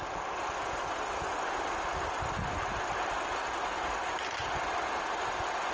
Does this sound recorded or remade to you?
recorded